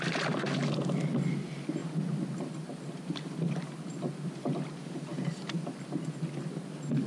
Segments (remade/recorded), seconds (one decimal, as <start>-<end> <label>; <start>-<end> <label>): 0.0-7.1 recorded